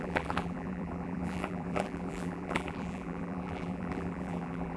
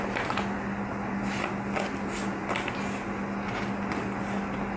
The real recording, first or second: second